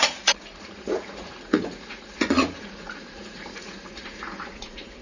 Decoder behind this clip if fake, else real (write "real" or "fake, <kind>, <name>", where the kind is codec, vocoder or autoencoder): fake, vocoder, Vocos